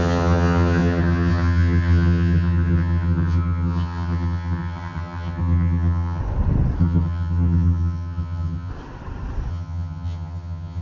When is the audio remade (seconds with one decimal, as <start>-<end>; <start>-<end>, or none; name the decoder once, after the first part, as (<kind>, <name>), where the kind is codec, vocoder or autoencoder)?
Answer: 0.0-6.2 (vocoder, HiFi-GAN); 6.8-8.7; 9.5-10.8